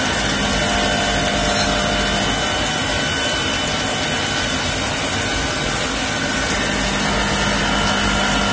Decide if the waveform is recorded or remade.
recorded